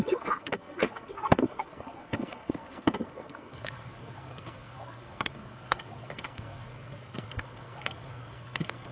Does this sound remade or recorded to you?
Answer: remade